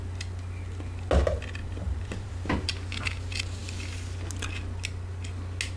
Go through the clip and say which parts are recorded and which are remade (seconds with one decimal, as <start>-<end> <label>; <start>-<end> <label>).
0.0-1.6 recorded; 1.6-2.3 remade; 2.3-5.8 recorded